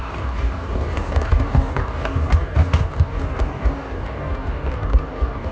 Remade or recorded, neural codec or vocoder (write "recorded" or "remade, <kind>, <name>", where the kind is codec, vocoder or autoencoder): remade, codec, DAC